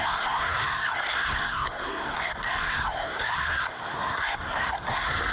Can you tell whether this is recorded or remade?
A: remade